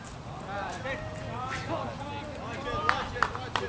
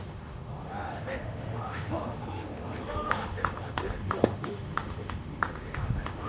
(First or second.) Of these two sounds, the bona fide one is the first